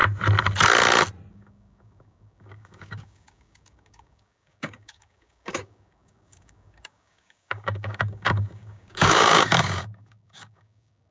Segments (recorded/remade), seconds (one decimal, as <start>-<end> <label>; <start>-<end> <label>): 0.0-1.3 recorded; 1.3-11.1 remade